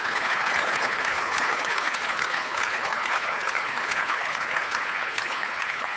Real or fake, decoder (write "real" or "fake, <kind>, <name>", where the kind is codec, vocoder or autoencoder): fake, codec, HILCodec